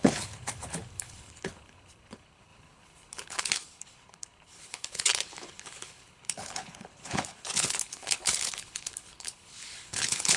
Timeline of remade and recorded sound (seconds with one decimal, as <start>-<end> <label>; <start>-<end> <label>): 0.0-10.4 remade